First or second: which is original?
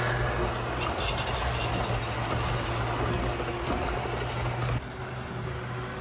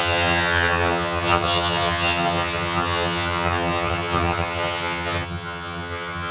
first